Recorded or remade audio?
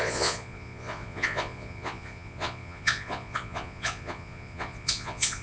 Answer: remade